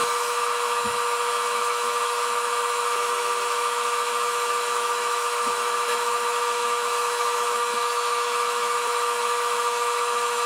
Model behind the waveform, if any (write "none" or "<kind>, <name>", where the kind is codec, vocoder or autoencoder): autoencoder, DAC-VAE